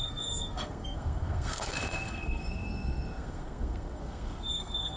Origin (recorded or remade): remade